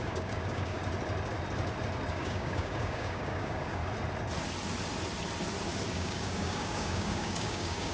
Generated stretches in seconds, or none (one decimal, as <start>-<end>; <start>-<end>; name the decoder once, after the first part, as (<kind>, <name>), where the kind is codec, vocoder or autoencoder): 0.0-0.8 (codec, DAC); 2.1-3.8; 5.9-7.9